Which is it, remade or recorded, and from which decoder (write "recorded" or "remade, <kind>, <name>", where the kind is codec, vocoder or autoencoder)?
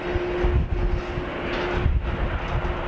recorded